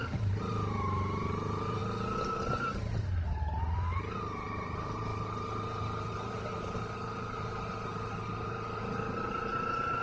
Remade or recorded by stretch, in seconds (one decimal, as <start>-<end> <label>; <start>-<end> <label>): 0.0-1.8 remade; 1.8-2.9 recorded; 2.9-10.0 remade